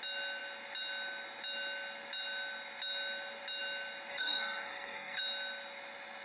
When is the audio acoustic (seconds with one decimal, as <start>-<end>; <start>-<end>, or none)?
0.0-4.1; 5.2-6.2